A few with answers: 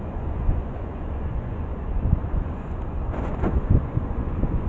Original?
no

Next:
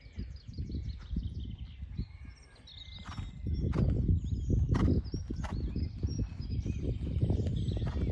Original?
yes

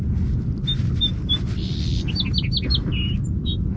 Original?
yes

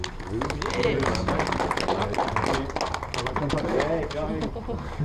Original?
yes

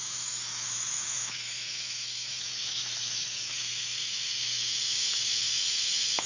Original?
no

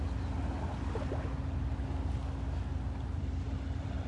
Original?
yes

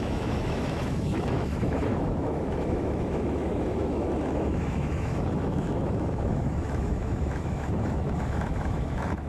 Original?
no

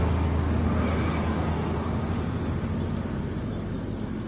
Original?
yes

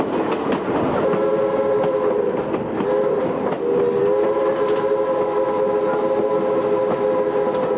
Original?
yes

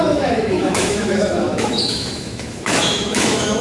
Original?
no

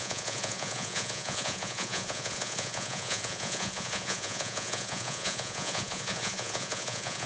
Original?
no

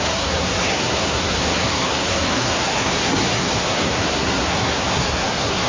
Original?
no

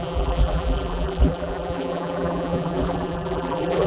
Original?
no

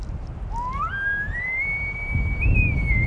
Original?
yes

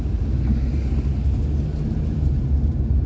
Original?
no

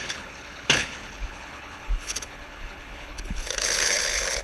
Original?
no